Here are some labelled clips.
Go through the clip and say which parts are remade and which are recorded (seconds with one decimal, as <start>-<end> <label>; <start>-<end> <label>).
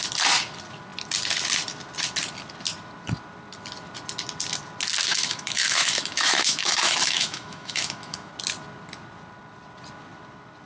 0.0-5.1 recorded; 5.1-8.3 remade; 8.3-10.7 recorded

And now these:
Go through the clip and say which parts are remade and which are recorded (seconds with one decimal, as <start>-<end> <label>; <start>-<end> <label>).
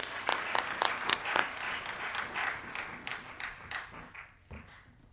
0.0-5.1 recorded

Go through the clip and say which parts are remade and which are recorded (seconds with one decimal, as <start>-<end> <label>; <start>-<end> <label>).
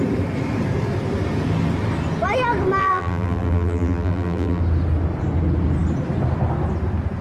0.0-2.8 recorded; 2.8-4.6 remade; 4.6-7.2 recorded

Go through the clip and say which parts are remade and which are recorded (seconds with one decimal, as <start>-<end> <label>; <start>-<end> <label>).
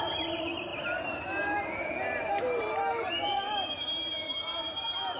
0.0-0.7 remade; 0.7-2.6 recorded; 2.6-5.2 remade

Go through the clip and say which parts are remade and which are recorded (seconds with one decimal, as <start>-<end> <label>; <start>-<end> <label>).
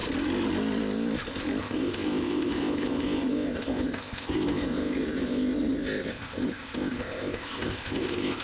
0.0-1.6 recorded; 1.6-8.4 remade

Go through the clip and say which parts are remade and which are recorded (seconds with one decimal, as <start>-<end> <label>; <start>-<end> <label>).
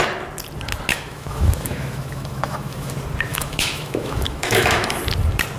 0.0-0.9 recorded; 0.9-2.9 remade; 2.9-3.3 recorded; 3.3-5.0 remade; 5.0-5.6 recorded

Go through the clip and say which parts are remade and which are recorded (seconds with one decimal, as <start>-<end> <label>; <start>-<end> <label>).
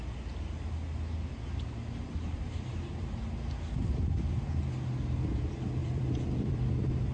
0.0-5.8 recorded; 5.8-6.6 remade; 6.6-7.1 recorded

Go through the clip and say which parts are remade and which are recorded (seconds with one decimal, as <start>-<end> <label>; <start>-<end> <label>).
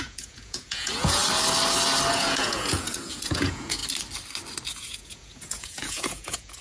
0.0-1.2 remade; 1.2-2.1 recorded; 2.1-3.8 remade; 3.8-4.7 recorded; 4.7-6.6 remade